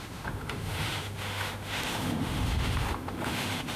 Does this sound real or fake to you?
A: fake